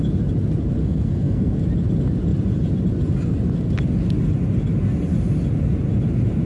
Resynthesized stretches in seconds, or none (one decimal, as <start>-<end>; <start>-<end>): 0.8-1.6